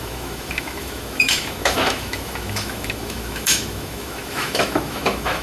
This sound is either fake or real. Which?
fake